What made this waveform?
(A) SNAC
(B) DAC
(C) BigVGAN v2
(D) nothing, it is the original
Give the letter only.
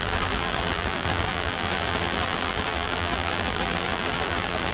C